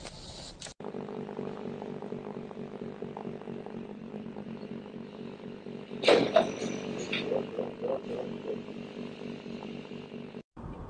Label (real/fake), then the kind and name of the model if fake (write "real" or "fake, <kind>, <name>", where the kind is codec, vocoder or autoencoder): real